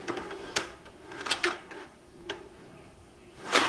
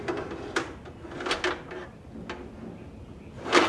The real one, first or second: second